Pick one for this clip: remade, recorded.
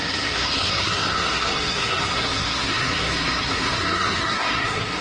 remade